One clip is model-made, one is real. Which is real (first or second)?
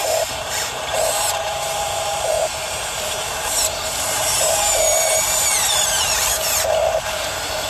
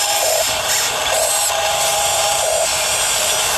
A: second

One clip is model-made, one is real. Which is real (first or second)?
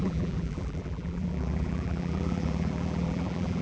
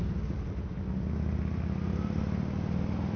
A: second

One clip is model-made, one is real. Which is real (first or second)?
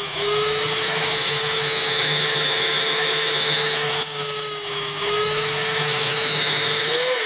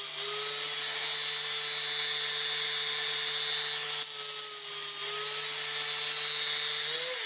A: second